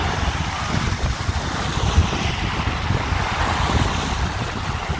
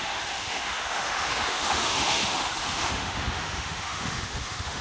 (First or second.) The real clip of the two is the first